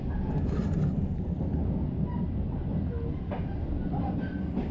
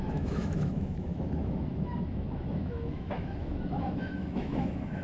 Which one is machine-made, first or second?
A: second